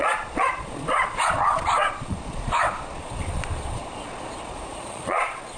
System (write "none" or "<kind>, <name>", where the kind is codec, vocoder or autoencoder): vocoder, Vocos